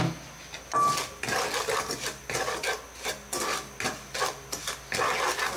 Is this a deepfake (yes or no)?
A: no